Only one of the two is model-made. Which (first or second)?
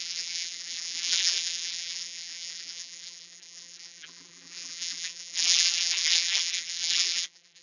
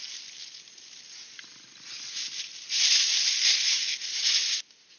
first